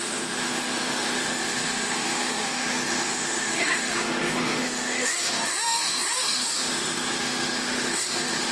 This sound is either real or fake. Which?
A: fake